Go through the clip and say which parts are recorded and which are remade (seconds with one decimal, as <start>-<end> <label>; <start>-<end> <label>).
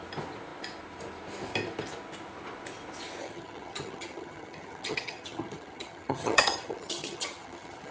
0.0-3.2 recorded; 3.2-7.9 remade